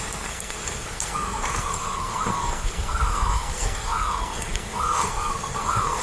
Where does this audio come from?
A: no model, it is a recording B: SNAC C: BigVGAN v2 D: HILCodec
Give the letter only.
B